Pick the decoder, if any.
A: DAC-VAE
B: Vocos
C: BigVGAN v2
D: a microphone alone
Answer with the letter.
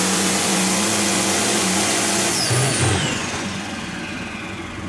B